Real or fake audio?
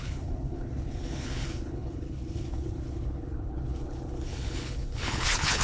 fake